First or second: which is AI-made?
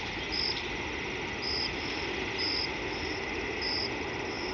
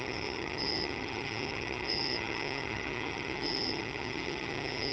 second